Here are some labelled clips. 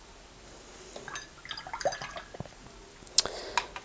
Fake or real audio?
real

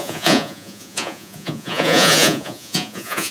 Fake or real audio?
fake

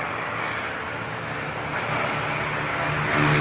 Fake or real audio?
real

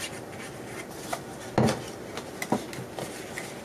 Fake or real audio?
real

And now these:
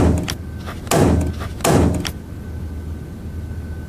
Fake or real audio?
real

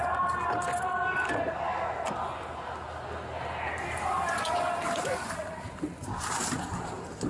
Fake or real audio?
real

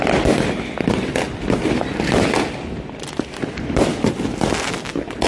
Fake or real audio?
real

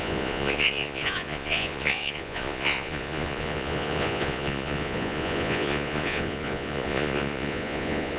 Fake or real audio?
fake